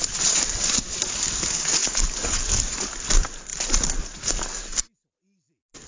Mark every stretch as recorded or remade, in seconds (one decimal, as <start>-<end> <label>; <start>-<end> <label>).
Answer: 0.0-5.9 recorded